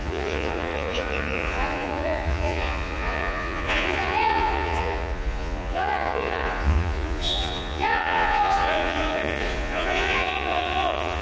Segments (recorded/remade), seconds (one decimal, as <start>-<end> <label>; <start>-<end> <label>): 0.0-11.2 remade

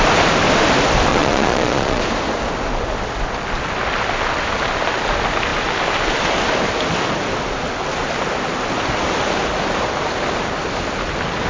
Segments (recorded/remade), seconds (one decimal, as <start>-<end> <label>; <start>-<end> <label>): 0.0-1.1 recorded; 1.1-2.0 remade; 2.0-11.5 recorded

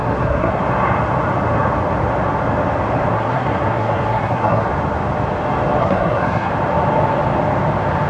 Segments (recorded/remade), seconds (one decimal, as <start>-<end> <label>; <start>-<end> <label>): 0.0-0.6 remade; 0.6-3.1 recorded; 3.1-4.7 remade; 4.7-5.8 recorded; 5.8-6.5 remade; 6.5-8.1 recorded

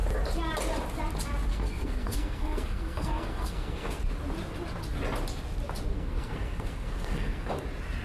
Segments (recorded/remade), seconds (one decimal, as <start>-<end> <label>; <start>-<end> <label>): 0.0-1.5 recorded; 1.5-4.0 remade; 4.0-5.9 recorded; 5.9-7.5 remade; 7.5-8.0 recorded